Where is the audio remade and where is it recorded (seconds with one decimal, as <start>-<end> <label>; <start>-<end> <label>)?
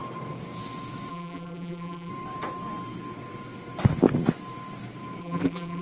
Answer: 0.0-1.1 recorded; 1.1-2.1 remade; 2.1-5.2 recorded; 5.2-5.8 remade